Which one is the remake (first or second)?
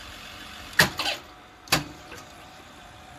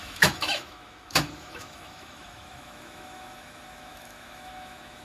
second